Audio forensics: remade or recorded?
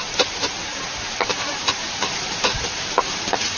remade